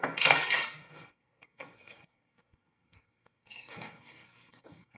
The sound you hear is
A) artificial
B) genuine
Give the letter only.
A